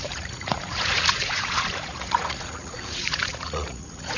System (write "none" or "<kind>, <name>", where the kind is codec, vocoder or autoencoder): vocoder, Vocos